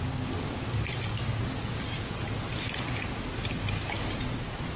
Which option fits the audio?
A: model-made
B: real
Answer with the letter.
B